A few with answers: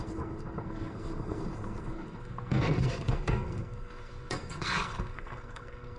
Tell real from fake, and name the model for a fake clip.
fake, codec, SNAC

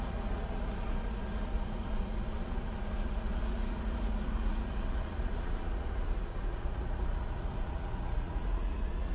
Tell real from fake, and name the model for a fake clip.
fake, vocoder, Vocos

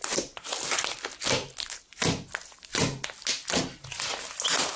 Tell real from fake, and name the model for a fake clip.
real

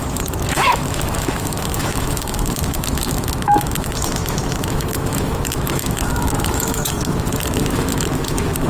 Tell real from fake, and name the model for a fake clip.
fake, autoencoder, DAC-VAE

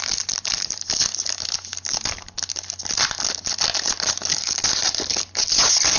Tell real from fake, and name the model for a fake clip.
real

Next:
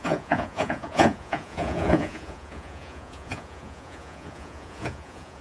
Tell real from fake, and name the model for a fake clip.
fake, vocoder, Vocos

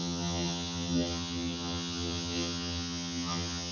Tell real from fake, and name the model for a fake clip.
fake, vocoder, HiFi-GAN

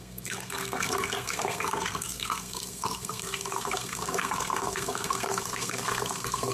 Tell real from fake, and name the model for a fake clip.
fake, codec, SNAC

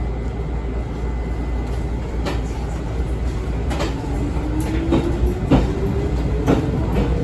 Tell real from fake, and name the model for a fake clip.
real